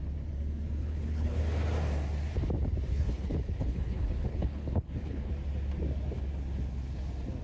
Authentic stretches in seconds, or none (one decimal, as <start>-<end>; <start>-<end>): 0.0-0.8; 1.4-2.9; 5.3-7.4